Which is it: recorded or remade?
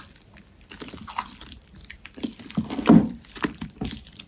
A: remade